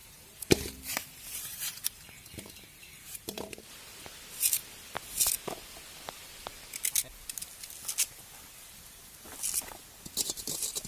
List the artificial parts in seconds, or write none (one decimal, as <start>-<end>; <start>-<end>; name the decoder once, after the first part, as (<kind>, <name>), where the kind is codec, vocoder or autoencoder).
0.0-3.8 (vocoder, BigVGAN v2)